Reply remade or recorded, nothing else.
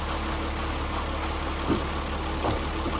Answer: recorded